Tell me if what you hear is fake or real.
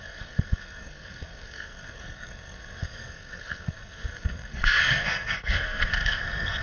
fake